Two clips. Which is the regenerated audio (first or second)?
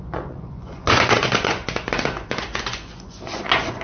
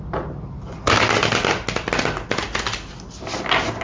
first